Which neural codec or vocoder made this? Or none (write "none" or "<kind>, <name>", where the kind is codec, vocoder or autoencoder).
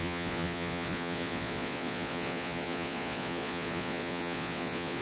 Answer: vocoder, Vocos